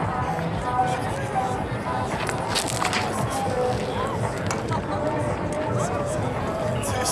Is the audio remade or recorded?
recorded